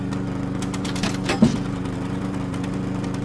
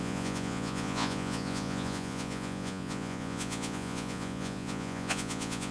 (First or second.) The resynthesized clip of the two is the second